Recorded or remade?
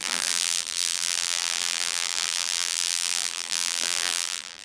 remade